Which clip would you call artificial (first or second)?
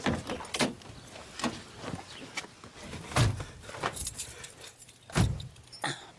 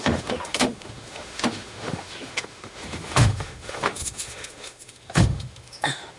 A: second